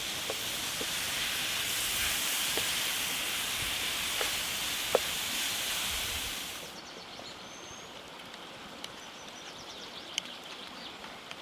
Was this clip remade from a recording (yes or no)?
yes